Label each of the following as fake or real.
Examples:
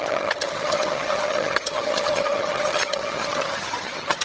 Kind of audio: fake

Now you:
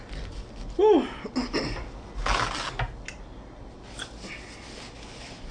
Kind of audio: real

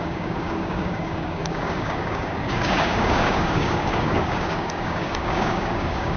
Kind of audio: fake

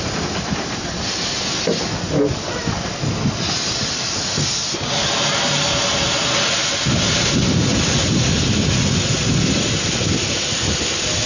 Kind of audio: real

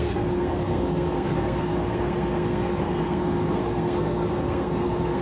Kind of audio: fake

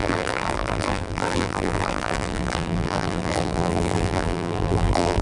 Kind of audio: fake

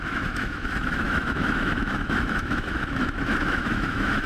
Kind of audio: fake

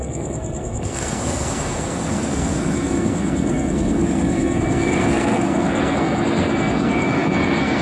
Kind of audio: fake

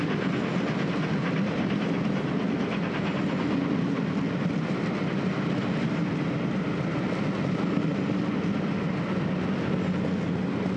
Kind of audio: real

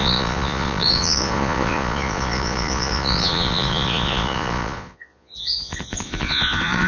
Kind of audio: fake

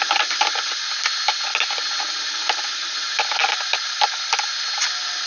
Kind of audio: real